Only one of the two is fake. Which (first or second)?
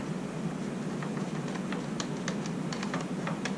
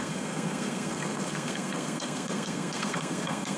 second